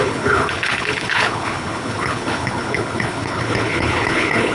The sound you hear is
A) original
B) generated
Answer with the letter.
B